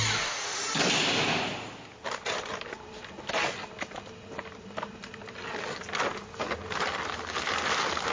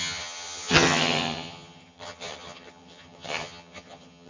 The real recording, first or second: first